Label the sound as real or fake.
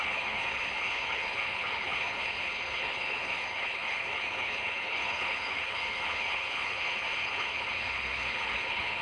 fake